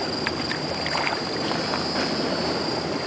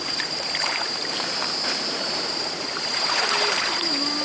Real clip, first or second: first